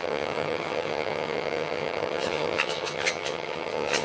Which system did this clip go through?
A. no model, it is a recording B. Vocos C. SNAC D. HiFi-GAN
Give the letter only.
D